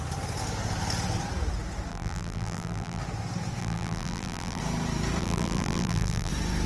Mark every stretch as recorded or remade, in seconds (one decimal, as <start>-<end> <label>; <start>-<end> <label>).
0.0-1.9 recorded; 1.9-3.0 remade; 3.0-3.6 recorded; 3.6-4.6 remade; 4.6-5.2 recorded; 5.2-6.3 remade; 6.3-6.7 recorded